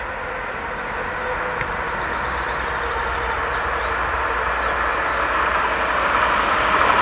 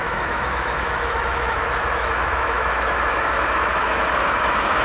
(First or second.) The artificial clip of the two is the second